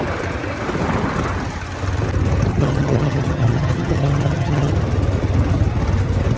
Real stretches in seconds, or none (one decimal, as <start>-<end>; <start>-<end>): 0.0-2.5; 4.7-6.4